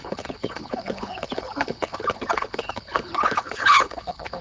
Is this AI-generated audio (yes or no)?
yes